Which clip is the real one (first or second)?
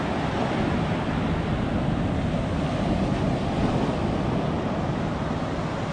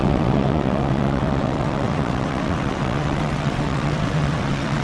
first